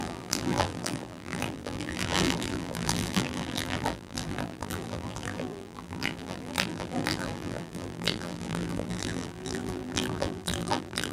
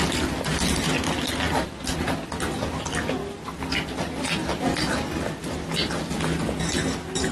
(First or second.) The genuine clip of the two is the second